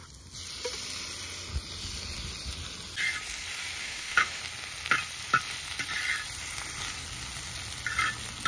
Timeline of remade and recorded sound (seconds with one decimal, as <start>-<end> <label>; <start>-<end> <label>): 0.0-3.8 recorded; 3.8-4.4 remade; 4.4-8.5 recorded